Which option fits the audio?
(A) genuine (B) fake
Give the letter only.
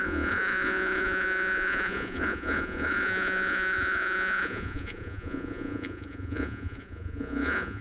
B